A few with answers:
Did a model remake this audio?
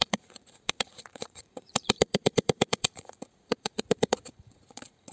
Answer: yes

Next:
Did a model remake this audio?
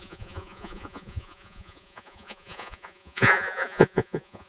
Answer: yes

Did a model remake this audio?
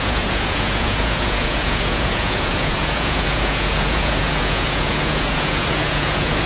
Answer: yes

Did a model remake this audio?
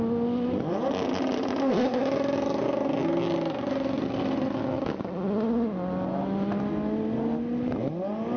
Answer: no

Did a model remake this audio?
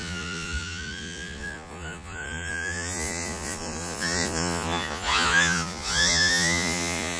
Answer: yes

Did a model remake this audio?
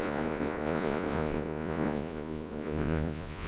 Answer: yes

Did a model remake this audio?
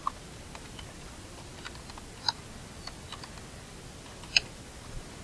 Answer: no